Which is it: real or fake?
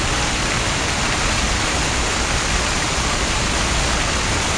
real